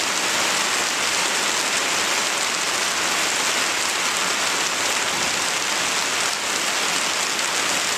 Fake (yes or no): no